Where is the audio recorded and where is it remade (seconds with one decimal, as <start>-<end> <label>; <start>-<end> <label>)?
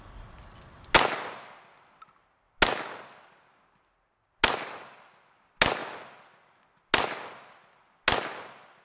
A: 0.0-8.8 recorded